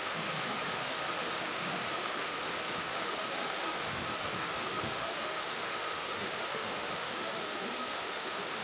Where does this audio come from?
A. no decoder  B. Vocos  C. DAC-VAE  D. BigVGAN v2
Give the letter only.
C